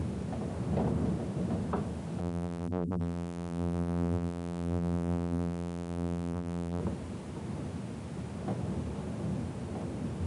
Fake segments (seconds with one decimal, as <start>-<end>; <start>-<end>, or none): 2.2-6.8